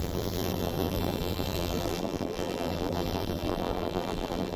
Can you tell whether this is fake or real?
fake